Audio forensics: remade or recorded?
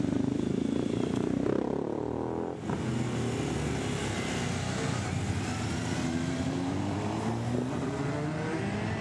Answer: recorded